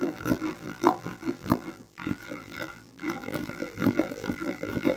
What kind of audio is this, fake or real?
fake